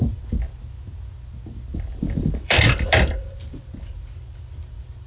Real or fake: fake